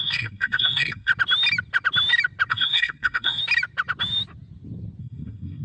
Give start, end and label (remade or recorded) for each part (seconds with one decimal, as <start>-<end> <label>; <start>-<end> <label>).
0.0-1.1 remade; 1.1-2.5 recorded; 2.5-3.4 remade; 3.4-5.0 recorded; 5.0-5.6 remade